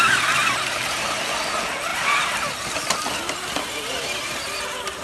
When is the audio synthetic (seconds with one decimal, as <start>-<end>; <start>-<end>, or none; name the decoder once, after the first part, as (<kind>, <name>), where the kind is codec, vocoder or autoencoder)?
0.4-1.0 (vocoder, BigVGAN v2); 1.9-2.7; 4.2-5.0